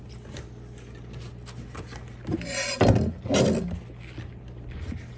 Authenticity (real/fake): real